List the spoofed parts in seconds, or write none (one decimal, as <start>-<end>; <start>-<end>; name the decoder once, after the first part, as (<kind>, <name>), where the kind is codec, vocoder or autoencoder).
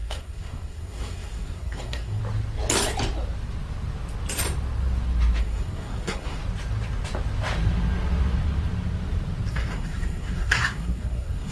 0.0-2.2 (codec, SNAC); 5.4-6.4; 9.5-11.5